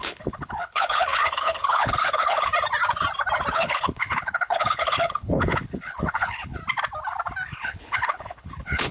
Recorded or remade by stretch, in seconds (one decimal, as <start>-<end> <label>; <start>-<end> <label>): 0.0-2.5 remade; 2.5-3.5 recorded; 3.5-6.6 remade; 6.6-7.5 recorded; 7.5-8.9 remade